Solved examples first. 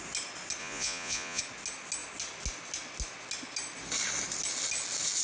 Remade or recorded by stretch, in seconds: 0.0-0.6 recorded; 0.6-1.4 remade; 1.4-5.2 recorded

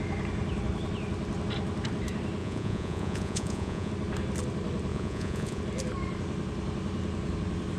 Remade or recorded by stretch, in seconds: 0.0-2.4 recorded; 2.4-3.9 remade; 3.9-4.9 recorded; 4.9-5.6 remade; 5.6-7.8 recorded

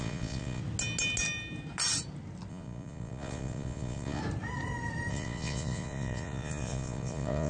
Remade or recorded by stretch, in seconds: 0.0-0.6 remade; 0.6-2.5 recorded; 2.5-4.2 remade; 4.2-5.1 recorded; 5.1-7.5 remade

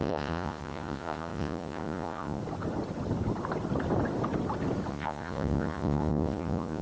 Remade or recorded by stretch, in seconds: 0.0-2.4 remade; 2.4-4.9 recorded; 4.9-6.8 remade

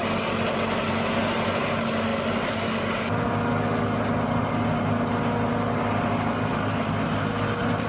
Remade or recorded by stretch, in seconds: 0.0-7.9 recorded

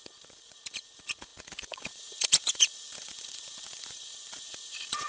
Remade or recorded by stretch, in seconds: 0.0-5.1 remade

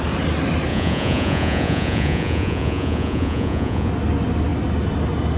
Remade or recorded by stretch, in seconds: 0.0-0.7 recorded; 0.7-3.9 remade; 3.9-5.4 recorded